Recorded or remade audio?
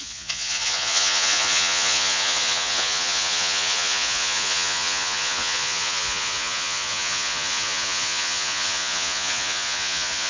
remade